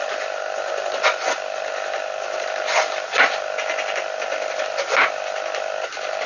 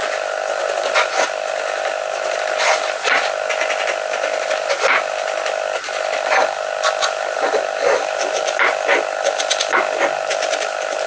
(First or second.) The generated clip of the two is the first